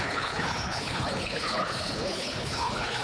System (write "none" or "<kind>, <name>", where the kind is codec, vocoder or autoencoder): codec, HILCodec